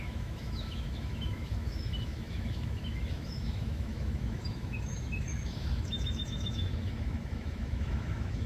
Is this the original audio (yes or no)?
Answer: no